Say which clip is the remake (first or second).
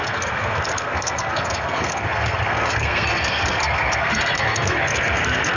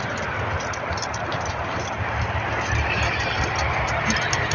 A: first